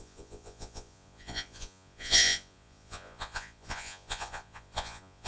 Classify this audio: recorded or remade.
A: remade